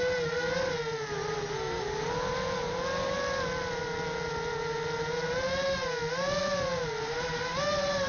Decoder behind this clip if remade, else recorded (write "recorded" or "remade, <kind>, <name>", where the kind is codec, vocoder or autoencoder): recorded